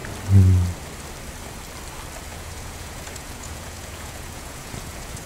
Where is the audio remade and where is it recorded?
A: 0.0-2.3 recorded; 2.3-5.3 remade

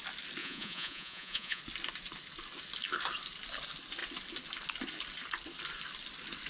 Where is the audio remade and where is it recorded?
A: 0.0-0.4 recorded; 0.4-1.6 remade; 1.6-6.5 recorded

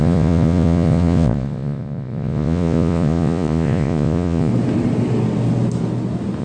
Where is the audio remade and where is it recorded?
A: 0.0-4.5 remade; 4.5-6.4 recorded